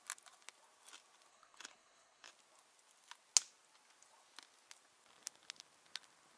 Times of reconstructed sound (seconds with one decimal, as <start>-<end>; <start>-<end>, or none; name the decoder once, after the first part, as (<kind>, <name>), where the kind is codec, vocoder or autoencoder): 1.3-2.3 (codec, HILCodec)